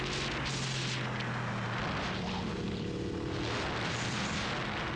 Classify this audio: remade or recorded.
recorded